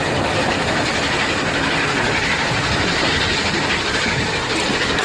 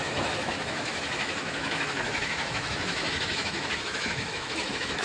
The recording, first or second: first